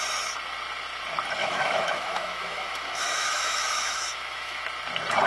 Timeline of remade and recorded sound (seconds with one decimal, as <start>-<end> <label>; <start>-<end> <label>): 0.0-1.4 recorded; 1.4-4.6 remade; 4.6-5.3 recorded